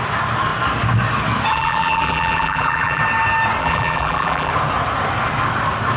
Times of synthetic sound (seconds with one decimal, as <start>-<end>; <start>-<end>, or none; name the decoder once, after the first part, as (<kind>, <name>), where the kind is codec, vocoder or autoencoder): 1.5-3.0 (vocoder, BigVGAN v2); 3.6-4.5

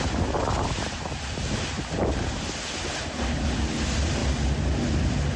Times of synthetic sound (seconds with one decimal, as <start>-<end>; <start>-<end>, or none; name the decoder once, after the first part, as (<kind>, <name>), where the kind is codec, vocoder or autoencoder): none

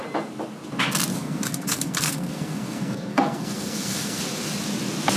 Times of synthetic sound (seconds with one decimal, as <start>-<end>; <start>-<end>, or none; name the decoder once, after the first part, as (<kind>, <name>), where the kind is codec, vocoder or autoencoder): 1.1-4.2 (codec, SNAC)

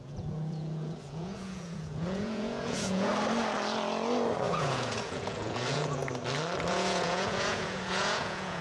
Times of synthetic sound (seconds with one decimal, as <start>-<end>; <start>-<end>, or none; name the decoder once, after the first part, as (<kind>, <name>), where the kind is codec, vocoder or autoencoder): 0.0-3.1 (vocoder, Vocos); 4.5-6.0; 6.7-8.6

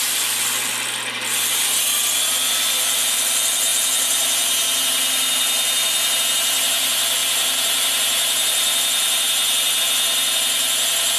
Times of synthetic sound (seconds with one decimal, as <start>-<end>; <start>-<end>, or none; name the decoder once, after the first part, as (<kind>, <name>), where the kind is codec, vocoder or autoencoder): none

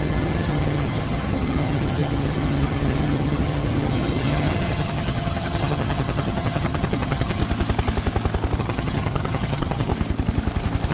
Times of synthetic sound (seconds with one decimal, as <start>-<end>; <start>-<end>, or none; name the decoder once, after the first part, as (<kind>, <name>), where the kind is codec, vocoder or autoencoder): 0.0-7.4 (vocoder, HiFi-GAN); 8.6-9.9

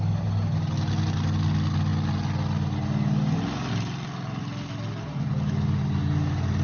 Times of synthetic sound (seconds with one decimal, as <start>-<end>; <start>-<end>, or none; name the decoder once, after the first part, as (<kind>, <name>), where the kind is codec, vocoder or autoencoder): none